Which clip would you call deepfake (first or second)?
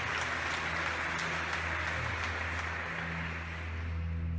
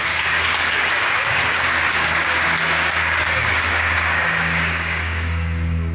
second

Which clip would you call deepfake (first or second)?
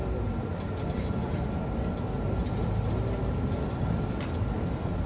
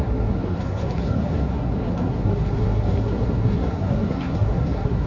second